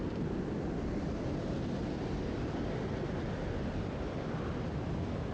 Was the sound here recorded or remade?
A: recorded